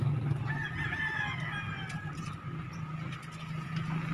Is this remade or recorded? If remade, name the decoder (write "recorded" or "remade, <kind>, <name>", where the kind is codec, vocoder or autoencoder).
recorded